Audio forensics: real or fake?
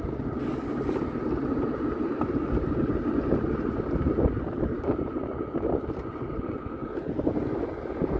real